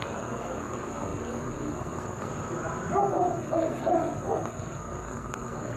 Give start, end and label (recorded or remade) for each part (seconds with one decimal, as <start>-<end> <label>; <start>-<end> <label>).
0.0-2.3 remade; 2.3-3.0 recorded; 3.0-5.8 remade